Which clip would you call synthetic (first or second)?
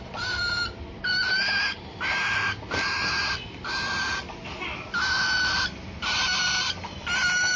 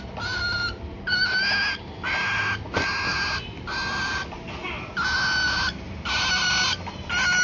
first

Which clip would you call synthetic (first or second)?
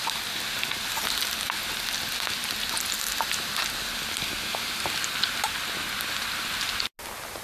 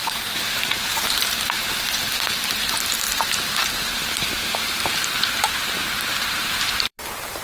second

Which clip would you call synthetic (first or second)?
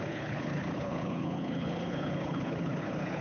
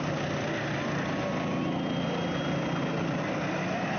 first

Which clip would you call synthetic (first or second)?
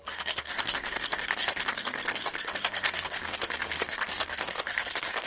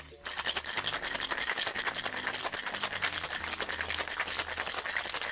first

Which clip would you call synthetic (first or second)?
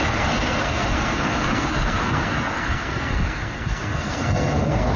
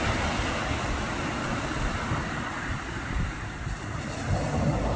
first